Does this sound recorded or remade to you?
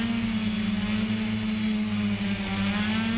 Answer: recorded